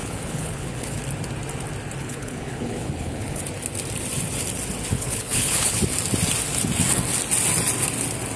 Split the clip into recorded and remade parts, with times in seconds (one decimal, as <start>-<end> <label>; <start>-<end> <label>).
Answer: 0.0-1.0 remade; 1.0-2.0 recorded; 2.0-3.4 remade; 3.4-4.9 recorded; 4.9-5.8 remade; 5.8-8.4 recorded